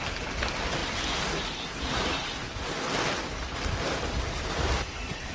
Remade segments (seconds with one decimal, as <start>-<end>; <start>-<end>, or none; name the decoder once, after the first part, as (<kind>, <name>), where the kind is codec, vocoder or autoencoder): none